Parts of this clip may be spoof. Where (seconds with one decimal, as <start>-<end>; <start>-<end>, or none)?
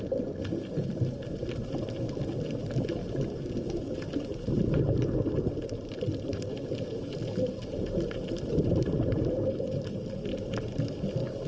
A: none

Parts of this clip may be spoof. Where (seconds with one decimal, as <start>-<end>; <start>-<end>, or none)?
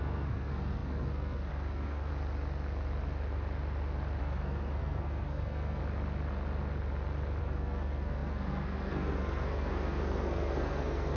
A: 0.0-2.1; 4.2-5.8; 7.4-11.2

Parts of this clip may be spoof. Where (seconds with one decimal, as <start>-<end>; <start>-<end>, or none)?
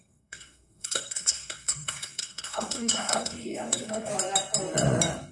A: 0.0-4.1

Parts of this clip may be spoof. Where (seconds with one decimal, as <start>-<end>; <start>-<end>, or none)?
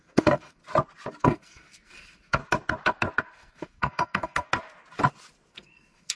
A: 0.0-0.6; 1.2-2.4; 3.2-4.5; 5.5-6.2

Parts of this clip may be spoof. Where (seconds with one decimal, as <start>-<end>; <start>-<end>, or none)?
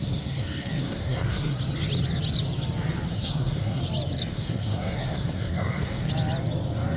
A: 0.0-1.6; 3.1-3.8; 4.3-6.1